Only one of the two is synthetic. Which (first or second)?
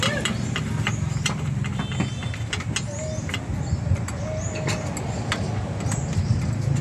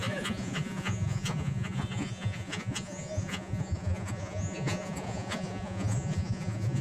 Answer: second